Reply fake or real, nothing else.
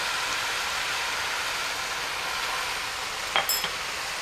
real